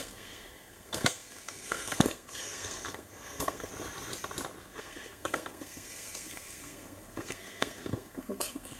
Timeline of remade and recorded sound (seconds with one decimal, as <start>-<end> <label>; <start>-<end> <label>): 0.0-3.7 remade; 3.7-4.6 recorded; 4.6-8.8 remade